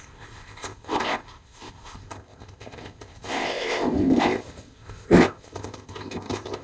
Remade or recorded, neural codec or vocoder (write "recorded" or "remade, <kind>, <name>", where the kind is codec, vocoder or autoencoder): remade, codec, ZipCodec